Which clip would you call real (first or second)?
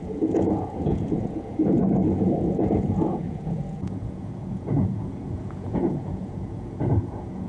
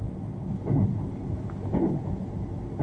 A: second